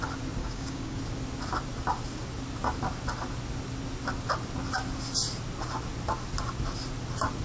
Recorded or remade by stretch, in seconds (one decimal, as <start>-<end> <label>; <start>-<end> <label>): 0.0-0.4 recorded; 0.4-1.0 remade; 1.0-7.4 recorded